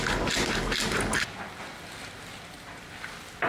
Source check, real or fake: real